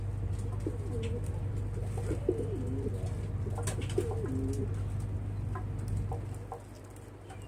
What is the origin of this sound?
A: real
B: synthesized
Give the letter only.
A